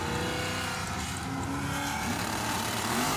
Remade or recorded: recorded